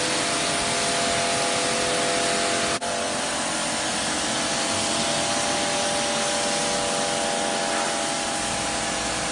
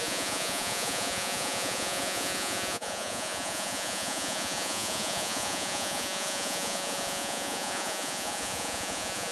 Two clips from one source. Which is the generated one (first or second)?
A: second